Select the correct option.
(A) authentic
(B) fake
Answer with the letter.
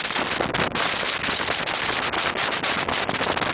A